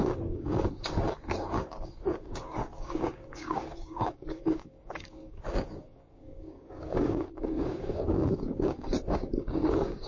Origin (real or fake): fake